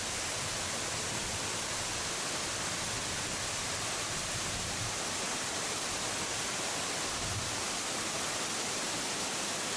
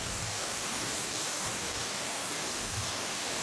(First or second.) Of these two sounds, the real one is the first